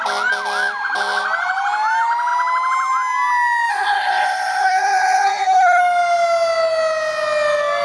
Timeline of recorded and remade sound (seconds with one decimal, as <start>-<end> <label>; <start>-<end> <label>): 0.0-3.7 recorded; 3.7-5.8 remade; 5.8-7.8 recorded